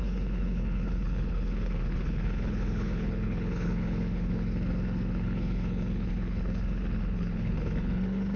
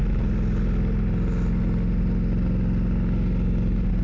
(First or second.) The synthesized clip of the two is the first